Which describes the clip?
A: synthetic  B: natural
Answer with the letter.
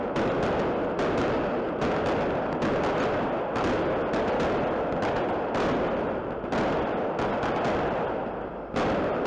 B